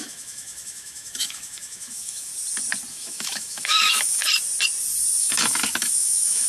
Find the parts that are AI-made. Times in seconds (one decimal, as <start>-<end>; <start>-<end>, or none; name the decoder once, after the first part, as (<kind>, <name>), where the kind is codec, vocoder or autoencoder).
0.0-2.3 (autoencoder, DAC-VAE); 2.9-4.2; 5.2-6.5